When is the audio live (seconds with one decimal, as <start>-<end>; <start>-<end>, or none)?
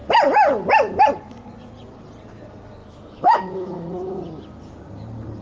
0.0-2.8; 4.2-5.4